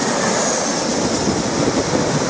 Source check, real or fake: real